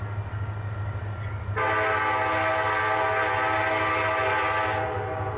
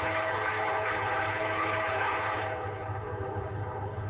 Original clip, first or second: first